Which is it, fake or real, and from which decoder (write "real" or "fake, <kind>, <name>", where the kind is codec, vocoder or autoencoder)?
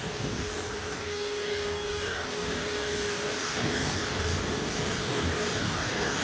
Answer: fake, codec, DAC